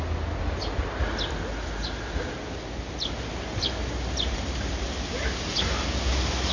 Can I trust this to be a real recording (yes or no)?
yes